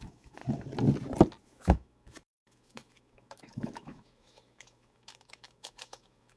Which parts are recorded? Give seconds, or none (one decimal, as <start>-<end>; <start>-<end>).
0.4-1.4